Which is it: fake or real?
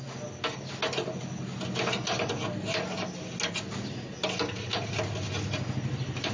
real